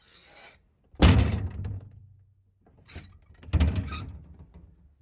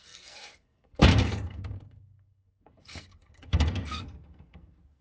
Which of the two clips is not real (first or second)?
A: second